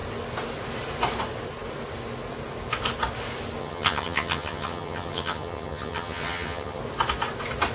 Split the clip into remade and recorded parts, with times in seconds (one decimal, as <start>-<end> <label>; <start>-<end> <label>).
0.0-3.6 recorded; 3.6-6.8 remade; 6.8-7.7 recorded